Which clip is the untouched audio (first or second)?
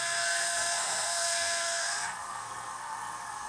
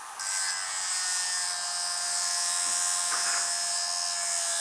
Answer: second